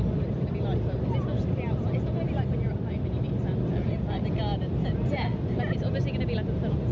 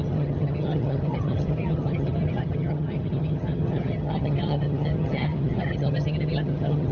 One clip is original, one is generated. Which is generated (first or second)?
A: second